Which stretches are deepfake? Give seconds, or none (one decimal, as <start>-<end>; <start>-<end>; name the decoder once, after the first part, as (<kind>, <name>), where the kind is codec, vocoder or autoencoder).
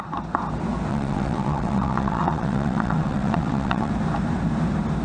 0.9-3.9 (vocoder, WaveNeXt)